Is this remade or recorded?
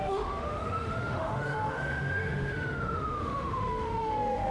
remade